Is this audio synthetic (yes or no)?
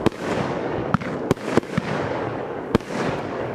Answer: yes